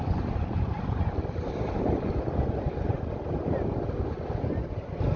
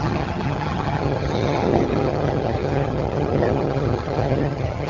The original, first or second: first